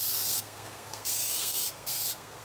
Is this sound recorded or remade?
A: remade